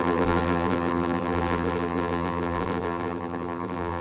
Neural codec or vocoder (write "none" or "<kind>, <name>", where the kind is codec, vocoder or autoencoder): vocoder, BigVGAN v2